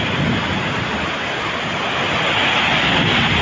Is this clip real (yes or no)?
yes